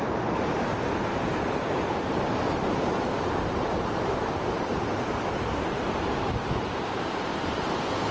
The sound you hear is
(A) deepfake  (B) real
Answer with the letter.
A